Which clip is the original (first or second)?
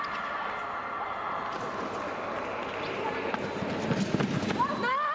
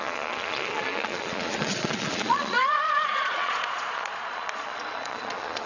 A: first